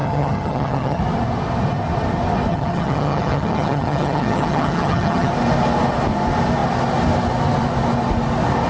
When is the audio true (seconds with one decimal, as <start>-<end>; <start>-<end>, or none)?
1.0-2.5; 5.3-8.7